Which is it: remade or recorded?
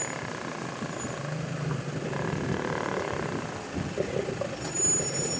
recorded